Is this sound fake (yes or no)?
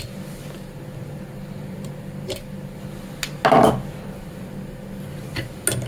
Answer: no